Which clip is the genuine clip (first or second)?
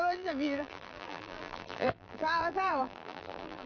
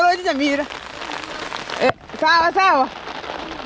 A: second